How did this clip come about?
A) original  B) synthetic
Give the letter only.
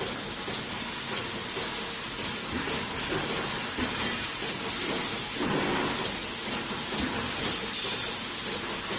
A